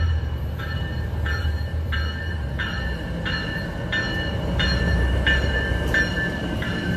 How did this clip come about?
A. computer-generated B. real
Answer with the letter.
A